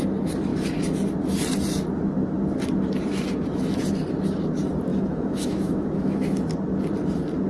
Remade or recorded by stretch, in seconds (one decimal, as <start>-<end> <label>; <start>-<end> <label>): 0.0-4.9 recorded; 4.9-6.4 remade; 6.4-7.5 recorded

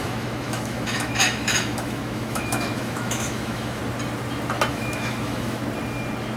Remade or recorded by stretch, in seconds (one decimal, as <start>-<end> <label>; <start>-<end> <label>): 0.0-3.8 remade; 3.8-4.7 recorded; 4.7-5.6 remade; 5.6-6.4 recorded

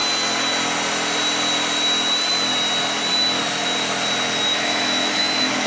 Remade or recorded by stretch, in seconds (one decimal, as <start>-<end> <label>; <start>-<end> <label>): 0.0-4.5 recorded; 4.5-5.7 remade

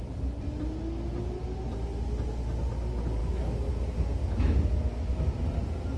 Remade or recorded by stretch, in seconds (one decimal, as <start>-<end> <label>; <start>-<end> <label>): 0.0-3.2 recorded; 3.2-3.7 remade; 3.7-4.2 recorded; 4.2-5.4 remade; 5.4-6.0 recorded